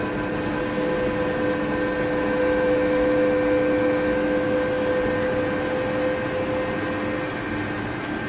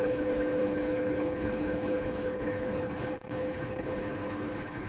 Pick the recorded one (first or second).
first